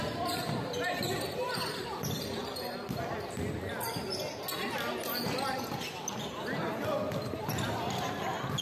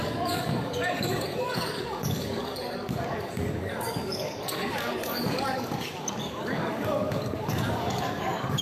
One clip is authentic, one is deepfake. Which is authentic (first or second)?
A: first